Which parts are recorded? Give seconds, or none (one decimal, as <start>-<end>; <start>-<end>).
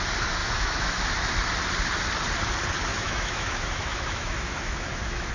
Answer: 0.0-0.4; 1.0-2.9